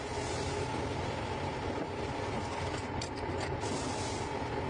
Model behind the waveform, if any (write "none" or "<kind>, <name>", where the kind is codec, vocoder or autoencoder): none